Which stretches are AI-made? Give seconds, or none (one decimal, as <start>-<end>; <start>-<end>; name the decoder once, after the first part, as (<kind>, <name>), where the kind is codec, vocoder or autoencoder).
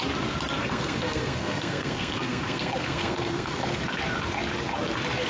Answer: 0.6-3.8 (codec, SNAC)